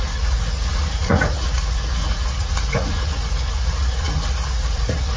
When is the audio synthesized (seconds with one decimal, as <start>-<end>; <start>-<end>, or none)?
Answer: 0.0-5.2